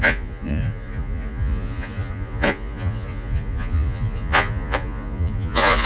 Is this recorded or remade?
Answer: remade